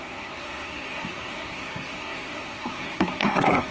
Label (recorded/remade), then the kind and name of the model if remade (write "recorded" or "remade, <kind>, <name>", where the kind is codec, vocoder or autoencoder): remade, codec, SNAC